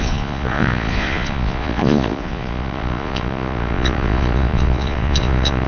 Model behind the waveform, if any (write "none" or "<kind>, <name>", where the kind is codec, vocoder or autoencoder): vocoder, Vocos